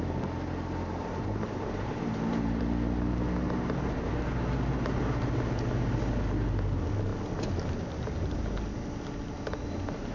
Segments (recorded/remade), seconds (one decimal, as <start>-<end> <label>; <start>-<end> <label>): 0.0-1.0 recorded; 1.0-2.6 remade; 2.6-10.1 recorded